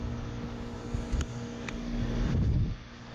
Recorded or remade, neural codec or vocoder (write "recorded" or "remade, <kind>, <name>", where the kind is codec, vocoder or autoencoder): remade, codec, DAC